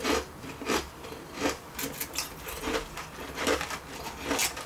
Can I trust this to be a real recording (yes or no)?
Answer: yes